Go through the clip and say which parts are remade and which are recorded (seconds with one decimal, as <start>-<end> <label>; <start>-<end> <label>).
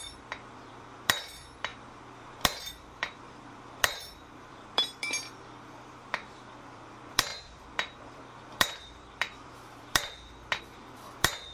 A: 0.0-11.5 remade